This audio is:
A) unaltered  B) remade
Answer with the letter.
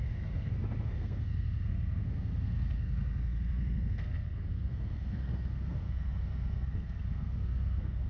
B